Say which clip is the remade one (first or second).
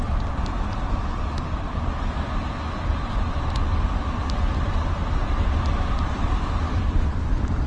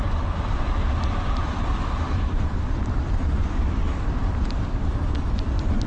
second